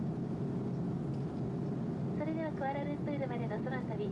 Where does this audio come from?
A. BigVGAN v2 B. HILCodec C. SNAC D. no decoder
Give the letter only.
D